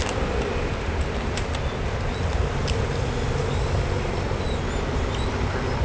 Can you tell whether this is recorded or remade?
recorded